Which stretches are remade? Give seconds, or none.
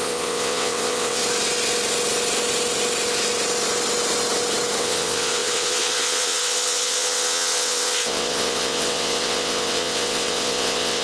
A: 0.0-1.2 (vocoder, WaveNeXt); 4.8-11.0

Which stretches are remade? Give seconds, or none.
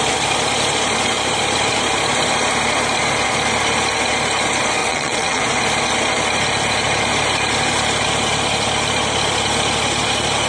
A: 4.8-5.4 (vocoder, WaveNeXt)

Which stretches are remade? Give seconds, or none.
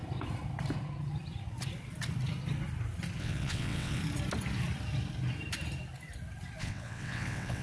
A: 3.2-4.0 (vocoder, WaveNeXt); 6.6-7.6